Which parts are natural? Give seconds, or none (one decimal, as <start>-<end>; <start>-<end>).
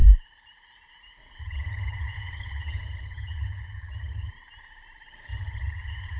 0.0-1.4; 4.3-5.3